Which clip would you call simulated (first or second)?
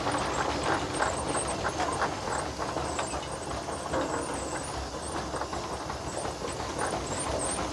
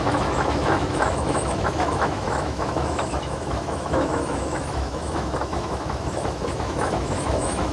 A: second